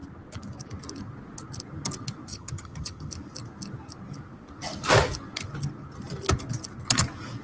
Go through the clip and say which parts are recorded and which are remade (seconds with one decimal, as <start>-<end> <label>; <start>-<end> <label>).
0.0-2.3 recorded; 2.3-3.1 remade; 3.1-7.4 recorded